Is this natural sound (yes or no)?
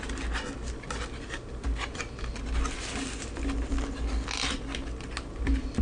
yes